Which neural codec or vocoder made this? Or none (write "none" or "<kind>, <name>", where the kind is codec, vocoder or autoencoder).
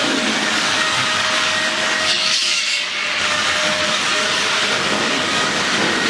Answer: codec, DAC